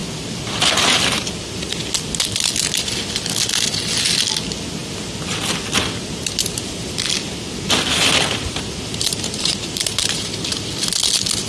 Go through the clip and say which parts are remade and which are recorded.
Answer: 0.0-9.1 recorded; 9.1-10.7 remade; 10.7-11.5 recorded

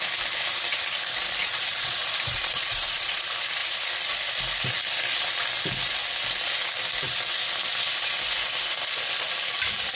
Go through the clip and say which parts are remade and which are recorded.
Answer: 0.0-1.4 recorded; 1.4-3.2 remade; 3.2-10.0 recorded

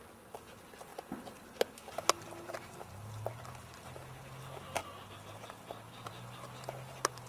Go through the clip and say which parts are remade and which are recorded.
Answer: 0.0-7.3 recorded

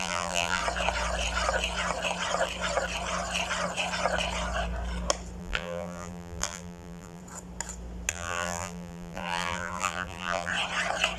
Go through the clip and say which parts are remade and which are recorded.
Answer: 0.0-0.6 remade; 0.6-5.4 recorded; 5.4-7.2 remade; 7.2-8.1 recorded; 8.1-10.5 remade; 10.5-11.2 recorded

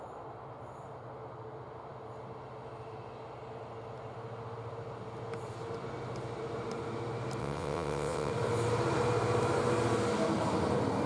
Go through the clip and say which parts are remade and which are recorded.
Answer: 0.0-7.4 recorded; 7.4-8.3 remade; 8.3-11.1 recorded